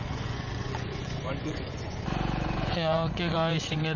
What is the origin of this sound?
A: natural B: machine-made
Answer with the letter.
B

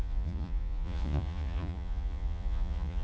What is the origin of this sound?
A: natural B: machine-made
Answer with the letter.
B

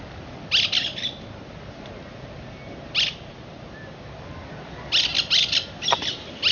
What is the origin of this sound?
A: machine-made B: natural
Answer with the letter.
B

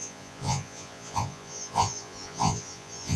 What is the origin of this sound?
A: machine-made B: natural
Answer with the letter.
A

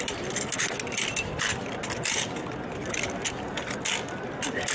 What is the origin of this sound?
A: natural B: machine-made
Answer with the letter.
A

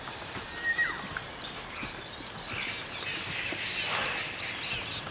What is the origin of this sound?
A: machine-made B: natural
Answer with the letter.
B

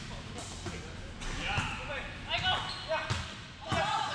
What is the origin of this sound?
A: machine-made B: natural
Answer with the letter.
B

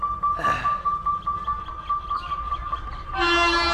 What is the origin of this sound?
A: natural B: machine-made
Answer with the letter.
A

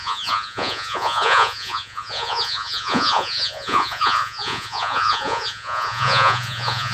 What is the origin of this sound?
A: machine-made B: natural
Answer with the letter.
A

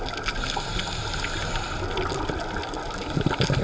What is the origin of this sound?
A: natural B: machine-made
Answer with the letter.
A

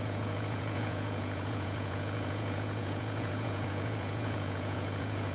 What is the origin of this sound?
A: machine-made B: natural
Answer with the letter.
A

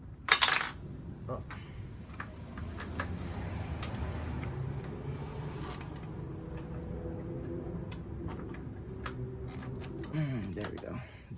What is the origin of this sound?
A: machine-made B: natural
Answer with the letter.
B